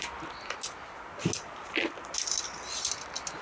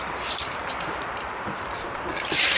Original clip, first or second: first